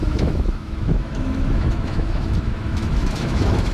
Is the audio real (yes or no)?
no